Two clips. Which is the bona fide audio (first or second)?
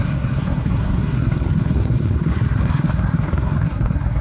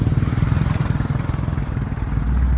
second